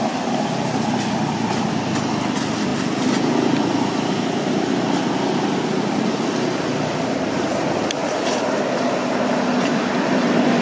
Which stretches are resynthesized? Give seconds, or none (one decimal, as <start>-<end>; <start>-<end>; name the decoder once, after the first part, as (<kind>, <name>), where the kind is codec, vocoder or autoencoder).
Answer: none